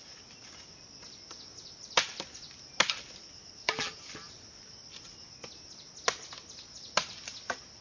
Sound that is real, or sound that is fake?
real